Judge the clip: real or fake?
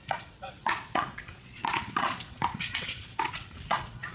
fake